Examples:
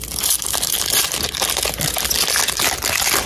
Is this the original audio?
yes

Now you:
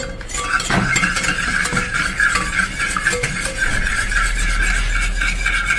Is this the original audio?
yes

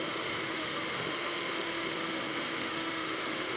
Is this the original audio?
no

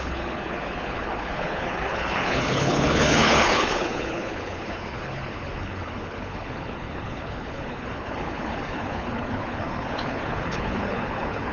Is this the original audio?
no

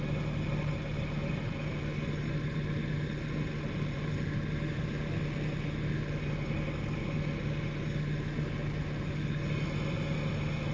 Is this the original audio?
yes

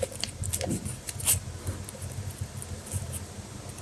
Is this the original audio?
yes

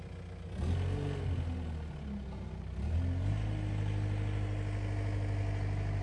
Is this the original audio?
yes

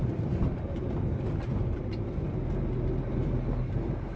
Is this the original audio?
yes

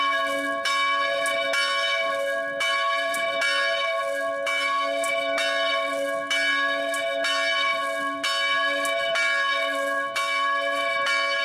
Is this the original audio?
yes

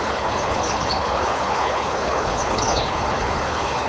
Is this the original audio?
no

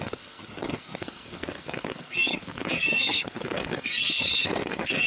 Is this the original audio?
no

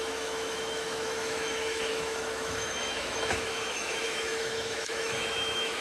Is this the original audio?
no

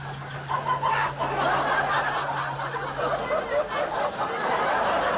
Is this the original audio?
yes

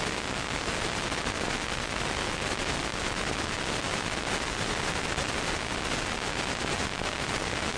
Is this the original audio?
yes